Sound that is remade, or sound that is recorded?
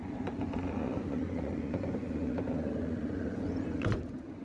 remade